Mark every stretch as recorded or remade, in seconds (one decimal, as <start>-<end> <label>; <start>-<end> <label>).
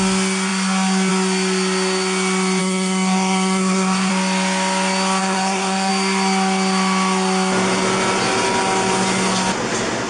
0.0-2.6 recorded; 2.6-4.1 remade; 4.1-5.2 recorded; 5.2-5.9 remade; 5.9-10.1 recorded